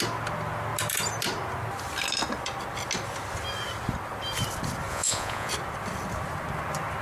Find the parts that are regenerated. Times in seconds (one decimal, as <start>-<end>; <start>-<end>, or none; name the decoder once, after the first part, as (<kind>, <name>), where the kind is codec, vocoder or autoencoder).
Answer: 4.9-5.5 (vocoder, Vocos)